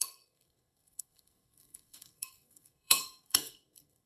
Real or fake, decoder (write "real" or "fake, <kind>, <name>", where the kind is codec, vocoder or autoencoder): fake, codec, SNAC